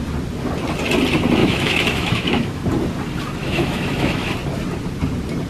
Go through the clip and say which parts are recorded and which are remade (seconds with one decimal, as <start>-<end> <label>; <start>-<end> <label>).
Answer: 0.0-1.4 recorded; 1.4-2.6 remade; 2.6-3.4 recorded; 3.4-4.3 remade; 4.3-5.5 recorded